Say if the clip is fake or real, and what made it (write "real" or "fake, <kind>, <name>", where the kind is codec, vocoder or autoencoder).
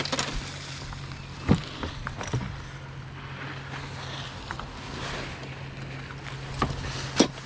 real